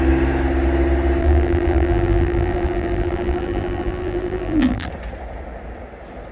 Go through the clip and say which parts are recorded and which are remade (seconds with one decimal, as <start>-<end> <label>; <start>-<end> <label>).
0.0-1.2 recorded; 1.2-4.9 remade; 4.9-6.3 recorded

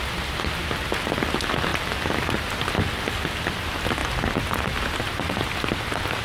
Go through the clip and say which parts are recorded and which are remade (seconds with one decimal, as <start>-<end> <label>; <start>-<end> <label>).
0.0-1.7 recorded; 1.7-3.0 remade; 3.0-4.0 recorded; 4.0-6.2 remade

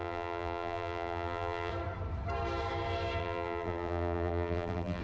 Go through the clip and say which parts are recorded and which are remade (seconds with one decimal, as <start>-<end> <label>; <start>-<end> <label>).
0.0-1.7 remade; 1.7-3.2 recorded; 3.2-5.0 remade

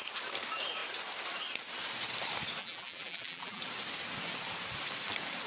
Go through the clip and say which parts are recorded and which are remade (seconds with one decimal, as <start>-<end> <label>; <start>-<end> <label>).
0.0-2.6 recorded; 2.6-3.6 remade; 3.6-5.5 recorded

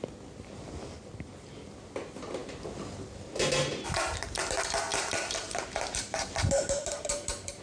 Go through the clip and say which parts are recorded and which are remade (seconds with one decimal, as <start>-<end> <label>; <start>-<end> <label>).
0.0-4.9 recorded; 4.9-7.6 remade